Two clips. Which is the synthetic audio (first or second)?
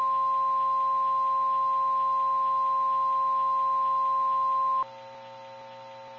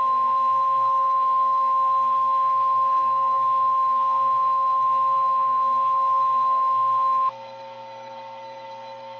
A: second